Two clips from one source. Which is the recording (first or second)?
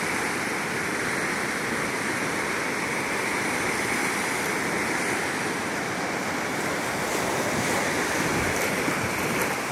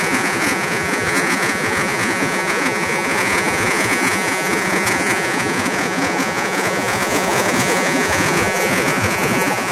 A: first